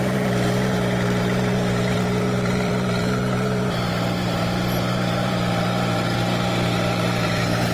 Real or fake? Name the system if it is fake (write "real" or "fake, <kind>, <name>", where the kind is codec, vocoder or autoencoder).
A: fake, vocoder, BigVGAN v2